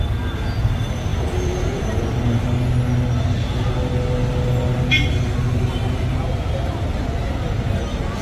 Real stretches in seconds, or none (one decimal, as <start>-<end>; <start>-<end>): 0.0-1.1; 2.4-8.2